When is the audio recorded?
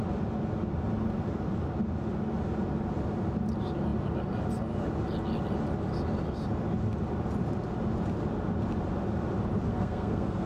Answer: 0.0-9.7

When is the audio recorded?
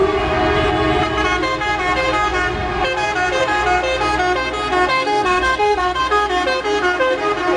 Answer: 0.0-4.9; 6.0-7.6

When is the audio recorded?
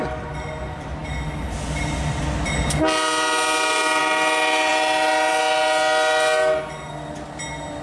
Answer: 0.0-7.8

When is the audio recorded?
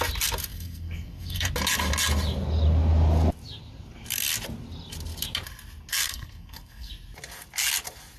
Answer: 0.0-0.5; 1.5-5.9; 6.9-8.2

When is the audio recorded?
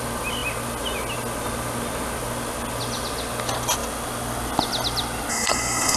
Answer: 0.0-5.3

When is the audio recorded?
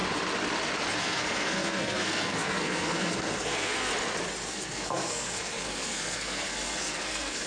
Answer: 0.0-1.0; 3.9-4.5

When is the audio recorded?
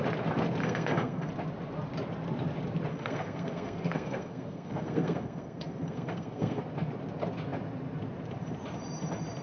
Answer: 0.0-0.6; 1.3-2.9; 6.6-9.4